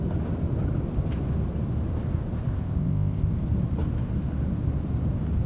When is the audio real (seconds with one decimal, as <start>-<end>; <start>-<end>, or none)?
0.0-2.5; 3.3-5.5